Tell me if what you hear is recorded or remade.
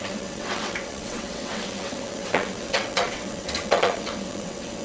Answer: remade